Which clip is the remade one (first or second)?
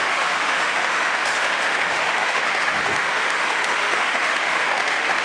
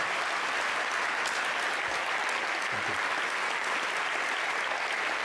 first